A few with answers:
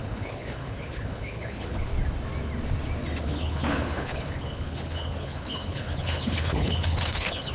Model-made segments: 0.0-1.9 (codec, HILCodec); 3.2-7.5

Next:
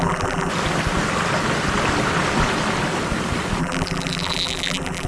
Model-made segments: 0.0-0.5 (vocoder, BigVGAN v2); 3.6-5.1

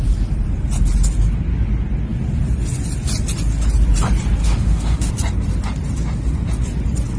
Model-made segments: 4.4-5.1 (autoencoder, DAC-VAE)

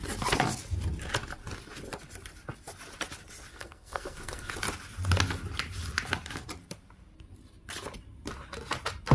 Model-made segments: 3.5-4.5 (codec, SNAC)